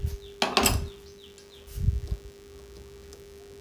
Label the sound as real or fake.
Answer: real